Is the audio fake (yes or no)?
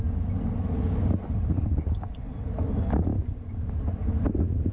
no